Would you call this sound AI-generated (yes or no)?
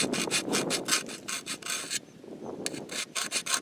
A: no